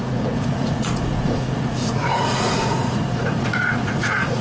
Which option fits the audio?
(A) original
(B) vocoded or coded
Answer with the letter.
B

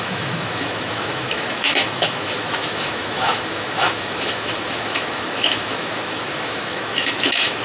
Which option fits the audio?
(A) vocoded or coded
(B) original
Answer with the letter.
A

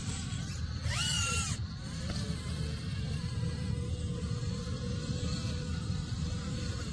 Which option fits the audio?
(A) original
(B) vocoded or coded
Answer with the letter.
A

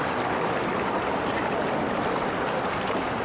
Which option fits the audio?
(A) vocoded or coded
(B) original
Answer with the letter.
B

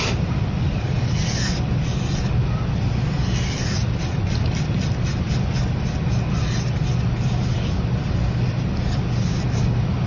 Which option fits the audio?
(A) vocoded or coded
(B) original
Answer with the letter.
B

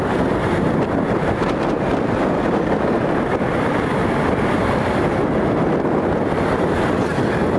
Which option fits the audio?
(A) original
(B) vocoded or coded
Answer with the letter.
A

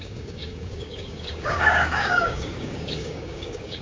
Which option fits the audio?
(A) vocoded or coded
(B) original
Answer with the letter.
A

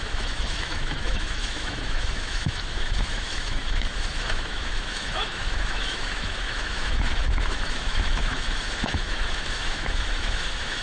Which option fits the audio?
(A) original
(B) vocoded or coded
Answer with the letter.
B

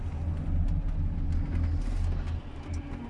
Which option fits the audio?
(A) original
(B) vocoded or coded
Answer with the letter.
A